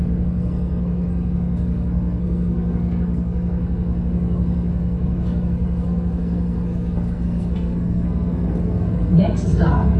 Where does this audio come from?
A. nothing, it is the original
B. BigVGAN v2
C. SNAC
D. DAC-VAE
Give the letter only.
C